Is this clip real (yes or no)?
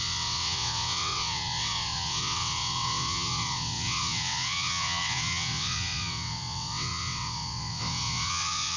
no